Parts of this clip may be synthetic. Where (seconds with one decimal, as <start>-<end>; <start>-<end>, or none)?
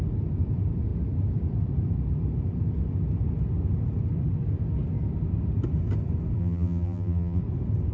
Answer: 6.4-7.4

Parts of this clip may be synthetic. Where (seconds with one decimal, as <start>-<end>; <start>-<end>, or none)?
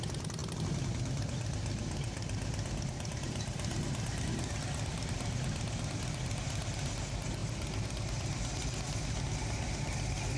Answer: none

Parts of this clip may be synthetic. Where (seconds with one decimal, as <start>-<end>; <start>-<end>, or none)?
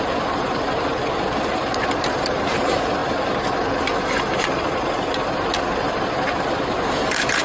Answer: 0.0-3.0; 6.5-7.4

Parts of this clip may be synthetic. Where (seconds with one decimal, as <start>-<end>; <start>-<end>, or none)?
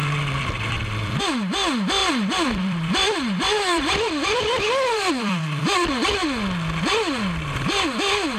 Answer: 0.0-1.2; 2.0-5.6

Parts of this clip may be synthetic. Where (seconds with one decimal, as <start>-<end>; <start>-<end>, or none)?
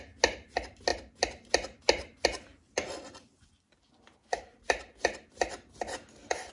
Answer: 2.5-6.5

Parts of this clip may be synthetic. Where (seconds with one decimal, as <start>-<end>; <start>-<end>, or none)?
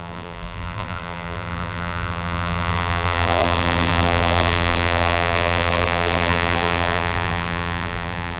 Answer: 0.0-8.4